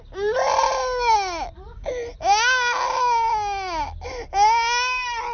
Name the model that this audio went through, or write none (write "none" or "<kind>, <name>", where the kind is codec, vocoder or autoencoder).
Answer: none